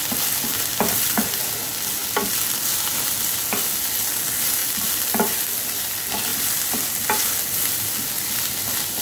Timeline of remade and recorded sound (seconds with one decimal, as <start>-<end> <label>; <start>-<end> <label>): 0.0-0.5 recorded; 0.5-1.4 remade; 1.4-4.6 recorded; 4.6-5.5 remade; 5.5-6.3 recorded; 6.3-7.3 remade; 7.3-9.0 recorded

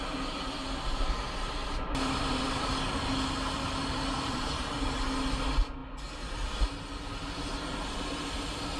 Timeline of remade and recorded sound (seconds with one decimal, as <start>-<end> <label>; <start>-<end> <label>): 0.0-1.6 recorded; 1.6-2.7 remade; 2.7-3.8 recorded; 3.8-4.7 remade; 4.7-8.8 recorded

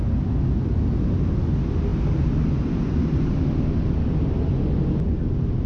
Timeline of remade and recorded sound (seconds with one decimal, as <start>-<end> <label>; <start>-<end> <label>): 0.0-1.9 recorded; 1.9-4.0 remade; 4.0-5.7 recorded

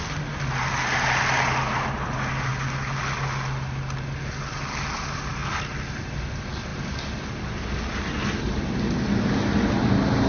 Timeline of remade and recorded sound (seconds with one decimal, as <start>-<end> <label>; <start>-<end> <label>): 0.0-10.3 recorded

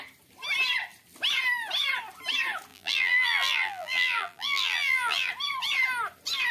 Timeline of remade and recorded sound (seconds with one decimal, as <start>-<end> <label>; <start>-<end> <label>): 0.0-2.7 recorded; 2.7-5.3 remade; 5.3-6.5 recorded

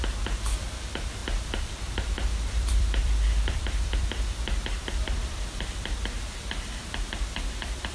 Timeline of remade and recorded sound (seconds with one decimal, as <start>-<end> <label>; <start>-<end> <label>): 0.0-1.2 recorded; 1.2-5.7 remade; 5.7-7.9 recorded

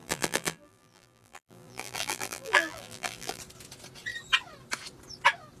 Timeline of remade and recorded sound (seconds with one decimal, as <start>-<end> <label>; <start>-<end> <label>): 0.0-3.4 remade; 3.4-5.6 recorded

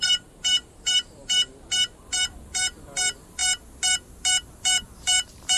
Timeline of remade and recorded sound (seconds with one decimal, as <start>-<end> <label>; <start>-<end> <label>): 0.0-1.2 remade; 1.2-2.0 recorded; 2.0-3.4 remade; 3.4-4.6 recorded; 4.6-5.6 remade